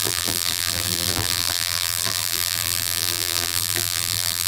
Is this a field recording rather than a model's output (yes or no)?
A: no